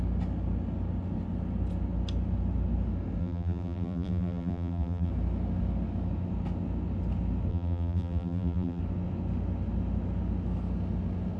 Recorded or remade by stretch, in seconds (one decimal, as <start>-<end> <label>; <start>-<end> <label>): 0.0-3.2 recorded; 3.2-5.1 remade; 5.1-7.5 recorded; 7.5-8.8 remade; 8.8-11.4 recorded